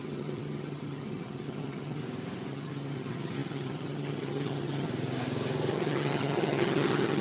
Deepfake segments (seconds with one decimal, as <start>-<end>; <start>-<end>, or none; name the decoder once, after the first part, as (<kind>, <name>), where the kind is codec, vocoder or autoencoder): 0.0-2.0 (vocoder, HiFi-GAN); 2.5-4.9; 5.7-7.2